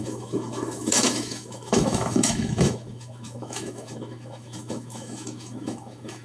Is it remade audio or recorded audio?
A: remade